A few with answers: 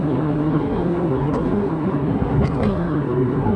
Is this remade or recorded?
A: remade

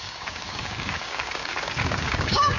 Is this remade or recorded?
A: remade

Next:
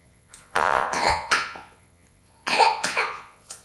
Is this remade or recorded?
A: remade